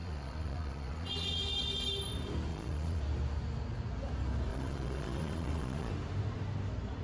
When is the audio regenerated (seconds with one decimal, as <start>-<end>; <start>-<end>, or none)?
0.0-1.4; 2.5-3.0; 4.5-5.9